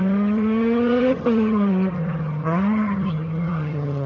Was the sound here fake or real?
fake